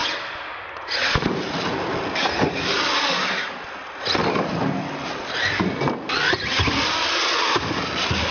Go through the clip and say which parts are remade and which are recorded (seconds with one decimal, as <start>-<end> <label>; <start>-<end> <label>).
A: 0.0-8.3 recorded